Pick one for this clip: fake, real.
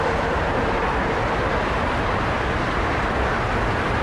real